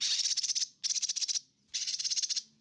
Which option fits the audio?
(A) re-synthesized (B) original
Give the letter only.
B